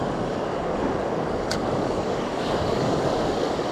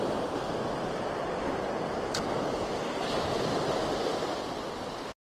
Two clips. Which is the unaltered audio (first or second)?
second